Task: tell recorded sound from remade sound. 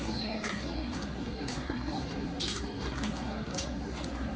remade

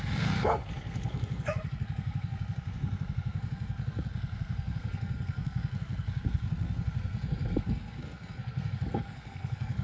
remade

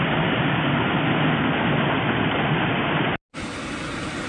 recorded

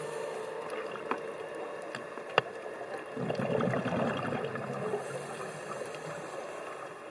recorded